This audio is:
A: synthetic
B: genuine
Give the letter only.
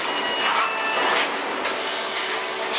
B